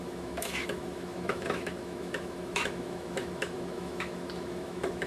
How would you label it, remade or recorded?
remade